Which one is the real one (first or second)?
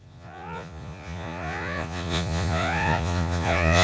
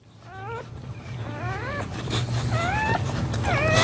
second